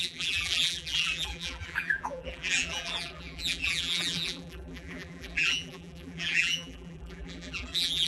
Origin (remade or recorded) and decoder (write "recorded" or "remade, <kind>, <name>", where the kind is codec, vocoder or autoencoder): remade, vocoder, BigVGAN v2